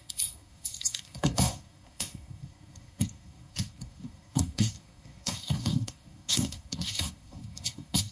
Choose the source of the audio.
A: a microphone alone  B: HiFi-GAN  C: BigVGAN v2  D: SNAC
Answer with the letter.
D